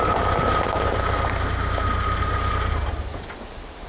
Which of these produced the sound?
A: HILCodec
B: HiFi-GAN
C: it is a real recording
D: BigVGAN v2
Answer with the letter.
C